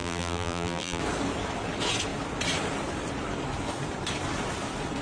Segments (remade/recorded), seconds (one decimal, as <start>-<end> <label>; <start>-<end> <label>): 0.0-1.0 remade; 1.0-5.0 recorded